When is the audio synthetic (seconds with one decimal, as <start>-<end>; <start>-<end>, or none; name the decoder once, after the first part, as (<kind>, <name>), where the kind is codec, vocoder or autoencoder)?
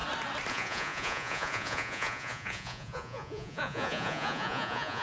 0.5-5.0 (vocoder, Vocos)